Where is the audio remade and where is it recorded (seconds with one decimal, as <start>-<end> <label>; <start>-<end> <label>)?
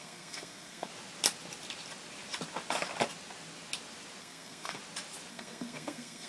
0.0-0.9 remade; 0.9-4.2 recorded; 4.2-4.8 remade; 4.8-5.3 recorded; 5.3-6.3 remade